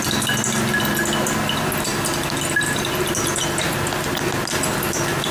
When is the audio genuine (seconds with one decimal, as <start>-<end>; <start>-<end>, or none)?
0.0-5.3